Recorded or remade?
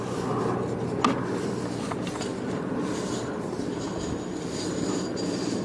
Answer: recorded